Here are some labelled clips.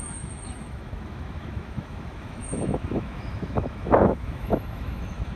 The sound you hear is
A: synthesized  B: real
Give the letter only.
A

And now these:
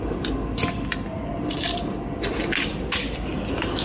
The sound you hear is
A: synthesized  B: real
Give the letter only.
B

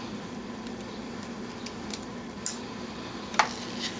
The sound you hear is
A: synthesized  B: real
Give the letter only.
B